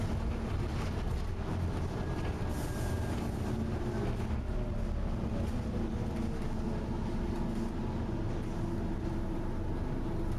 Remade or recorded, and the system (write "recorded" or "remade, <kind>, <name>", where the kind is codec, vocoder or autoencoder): recorded